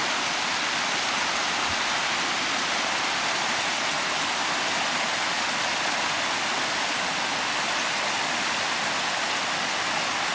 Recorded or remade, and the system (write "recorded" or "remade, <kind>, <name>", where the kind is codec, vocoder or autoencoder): recorded